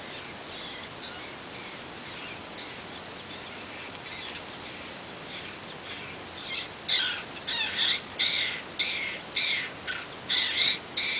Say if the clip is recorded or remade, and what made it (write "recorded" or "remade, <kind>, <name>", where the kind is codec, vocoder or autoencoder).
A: recorded